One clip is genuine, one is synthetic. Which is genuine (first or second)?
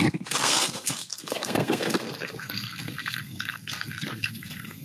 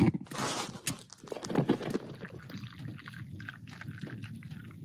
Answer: second